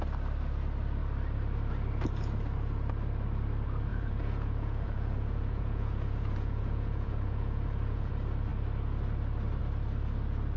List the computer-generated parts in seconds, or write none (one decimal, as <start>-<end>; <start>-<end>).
3.9-8.1